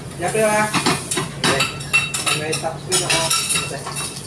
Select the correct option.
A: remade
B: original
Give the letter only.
B